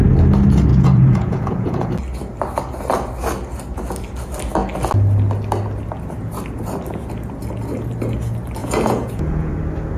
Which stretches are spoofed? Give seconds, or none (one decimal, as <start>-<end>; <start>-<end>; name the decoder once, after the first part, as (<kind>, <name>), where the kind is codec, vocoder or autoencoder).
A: 0.7-1.9 (vocoder, Vocos); 8.6-9.5

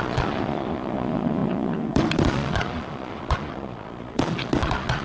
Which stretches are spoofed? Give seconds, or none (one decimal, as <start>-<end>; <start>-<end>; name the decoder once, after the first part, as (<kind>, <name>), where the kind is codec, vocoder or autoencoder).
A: 0.0-5.0 (vocoder, Vocos)

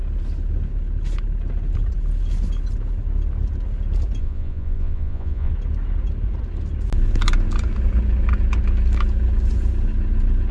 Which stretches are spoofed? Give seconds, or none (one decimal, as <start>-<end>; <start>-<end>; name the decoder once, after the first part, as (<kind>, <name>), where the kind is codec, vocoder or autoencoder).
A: 4.2-5.5 (vocoder, Vocos)

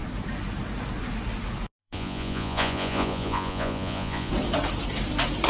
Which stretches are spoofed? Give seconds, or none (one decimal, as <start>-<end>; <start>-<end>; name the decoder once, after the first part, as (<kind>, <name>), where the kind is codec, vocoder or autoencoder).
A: 1.8-4.3 (vocoder, Vocos)